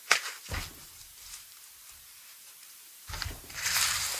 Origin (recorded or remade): remade